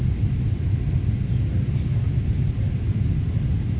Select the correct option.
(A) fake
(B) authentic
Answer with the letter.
B